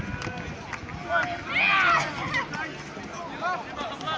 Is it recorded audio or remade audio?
recorded